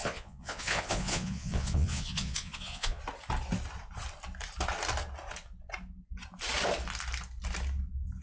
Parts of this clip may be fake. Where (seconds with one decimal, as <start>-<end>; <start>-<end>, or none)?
0.0-3.0